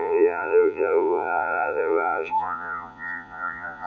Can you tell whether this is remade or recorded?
remade